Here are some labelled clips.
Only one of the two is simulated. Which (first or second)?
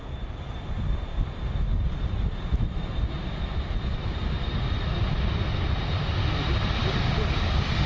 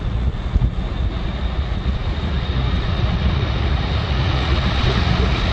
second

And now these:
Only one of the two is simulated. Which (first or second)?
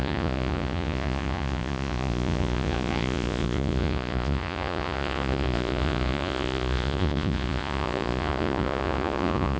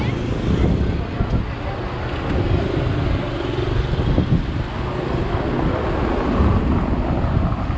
first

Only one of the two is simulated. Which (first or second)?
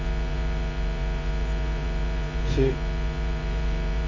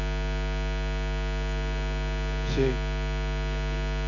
first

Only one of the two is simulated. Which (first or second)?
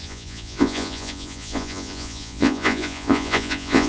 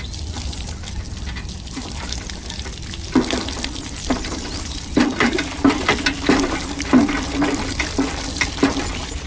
first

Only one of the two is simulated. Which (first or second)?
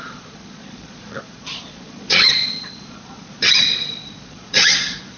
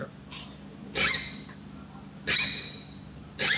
first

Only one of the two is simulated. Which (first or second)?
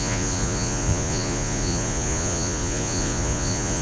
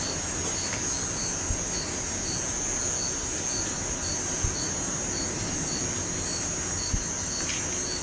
first